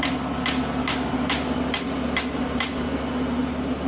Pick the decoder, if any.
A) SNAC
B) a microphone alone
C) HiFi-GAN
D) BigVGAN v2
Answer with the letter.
B